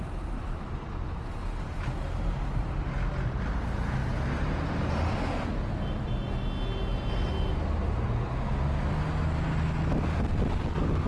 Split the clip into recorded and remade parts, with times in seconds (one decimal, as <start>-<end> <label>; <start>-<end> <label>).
0.0-11.1 recorded